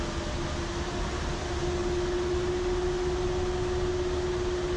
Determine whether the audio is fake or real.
real